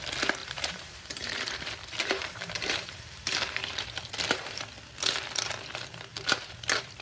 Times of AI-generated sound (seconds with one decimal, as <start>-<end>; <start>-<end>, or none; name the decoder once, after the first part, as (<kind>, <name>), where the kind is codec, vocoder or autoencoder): 0.4-4.6 (vocoder, BigVGAN v2); 6.1-7.0